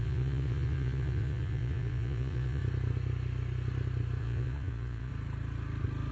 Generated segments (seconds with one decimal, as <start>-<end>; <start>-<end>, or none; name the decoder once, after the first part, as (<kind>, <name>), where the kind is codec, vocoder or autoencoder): 0.0-2.6 (vocoder, Vocos); 4.2-5.1